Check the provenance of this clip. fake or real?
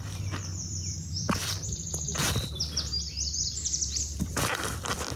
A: fake